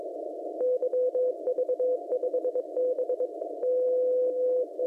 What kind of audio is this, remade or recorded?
recorded